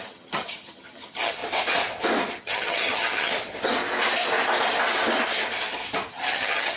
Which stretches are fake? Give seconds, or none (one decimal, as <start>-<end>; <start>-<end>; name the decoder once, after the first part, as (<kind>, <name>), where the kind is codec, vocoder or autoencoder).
0.0-1.4 (vocoder, HiFi-GAN); 2.4-3.3; 6.1-6.8